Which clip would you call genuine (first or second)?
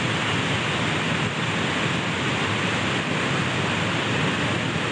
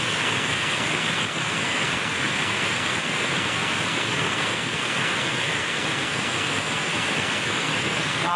first